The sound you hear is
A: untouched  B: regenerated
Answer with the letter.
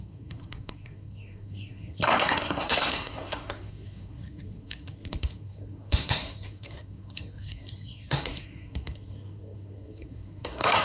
B